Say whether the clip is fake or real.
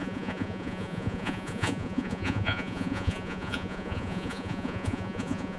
fake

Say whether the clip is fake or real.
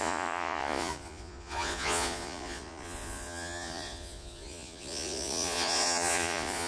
fake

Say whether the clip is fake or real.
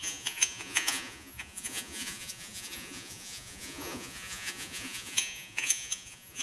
fake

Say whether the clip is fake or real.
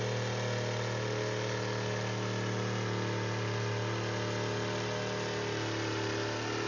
real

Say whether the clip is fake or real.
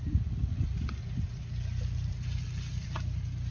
real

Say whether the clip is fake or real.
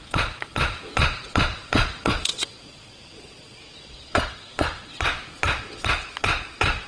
fake